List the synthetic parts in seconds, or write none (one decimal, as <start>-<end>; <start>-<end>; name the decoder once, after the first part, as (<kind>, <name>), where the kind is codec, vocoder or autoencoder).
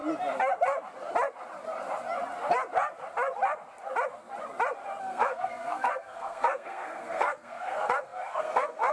5.0-8.9 (codec, SNAC)